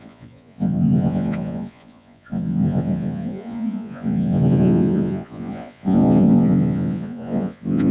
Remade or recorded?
remade